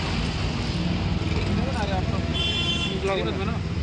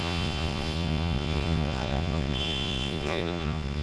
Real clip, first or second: first